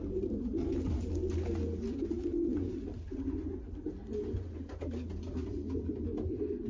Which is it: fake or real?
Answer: real